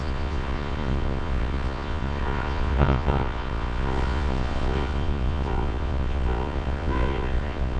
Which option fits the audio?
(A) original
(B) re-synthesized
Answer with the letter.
B